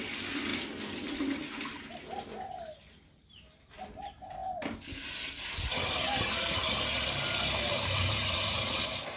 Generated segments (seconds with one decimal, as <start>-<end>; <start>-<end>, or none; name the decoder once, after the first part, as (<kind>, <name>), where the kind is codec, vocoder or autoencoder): none